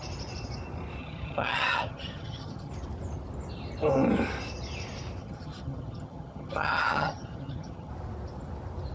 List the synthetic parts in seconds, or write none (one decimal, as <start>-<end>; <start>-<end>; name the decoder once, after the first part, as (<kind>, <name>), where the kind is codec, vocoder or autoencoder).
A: 1.0-2.7 (vocoder, HiFi-GAN); 5.2-7.9